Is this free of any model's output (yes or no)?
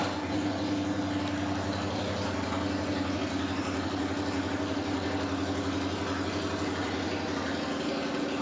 yes